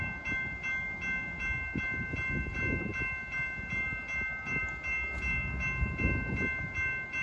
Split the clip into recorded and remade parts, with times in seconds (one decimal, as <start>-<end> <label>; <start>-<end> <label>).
0.0-7.2 recorded